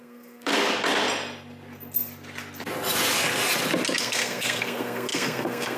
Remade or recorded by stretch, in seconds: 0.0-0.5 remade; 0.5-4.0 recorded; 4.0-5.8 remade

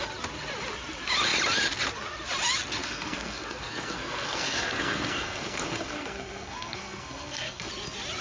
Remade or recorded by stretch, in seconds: 0.0-2.8 recorded; 2.8-7.7 remade; 7.7-8.2 recorded

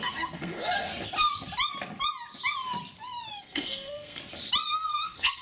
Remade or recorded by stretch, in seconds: 0.0-0.9 remade; 0.9-3.4 recorded; 3.4-4.2 remade; 4.2-4.7 recorded; 4.7-5.4 remade

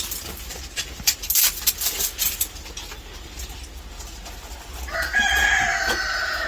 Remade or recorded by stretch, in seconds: 0.0-6.5 recorded

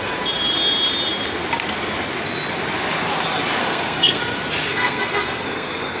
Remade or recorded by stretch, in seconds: 0.0-3.6 recorded; 3.6-4.2 remade; 4.2-4.7 recorded; 4.7-6.0 remade